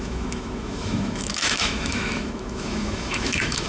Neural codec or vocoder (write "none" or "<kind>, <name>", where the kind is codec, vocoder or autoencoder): autoencoder, DAC-VAE